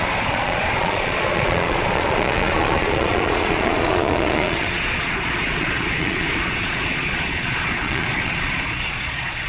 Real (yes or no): no